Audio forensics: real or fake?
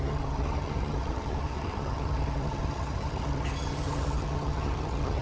fake